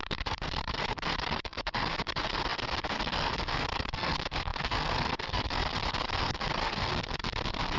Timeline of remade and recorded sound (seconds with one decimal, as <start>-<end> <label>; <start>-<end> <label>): 0.0-7.8 remade